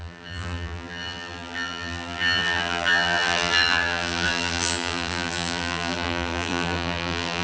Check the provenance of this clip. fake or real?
fake